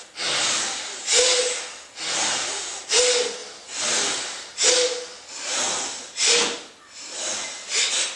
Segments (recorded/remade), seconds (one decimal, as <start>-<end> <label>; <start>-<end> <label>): 0.0-8.2 recorded